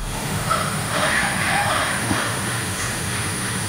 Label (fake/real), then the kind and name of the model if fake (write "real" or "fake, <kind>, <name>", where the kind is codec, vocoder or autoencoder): fake, autoencoder, DAC-VAE